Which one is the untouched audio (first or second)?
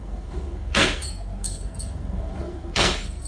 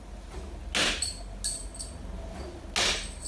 second